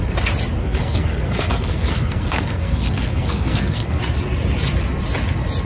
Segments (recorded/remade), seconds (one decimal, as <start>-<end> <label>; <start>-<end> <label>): 0.0-0.6 recorded; 0.6-4.0 remade; 4.0-5.7 recorded